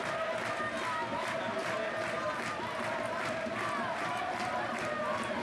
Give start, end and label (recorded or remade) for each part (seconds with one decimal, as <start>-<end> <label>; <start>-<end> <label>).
0.0-5.4 recorded